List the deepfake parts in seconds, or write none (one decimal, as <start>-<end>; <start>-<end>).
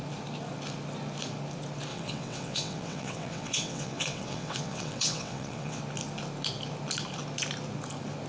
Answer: 1.9-5.8